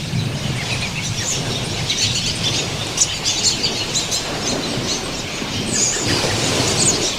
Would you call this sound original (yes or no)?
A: yes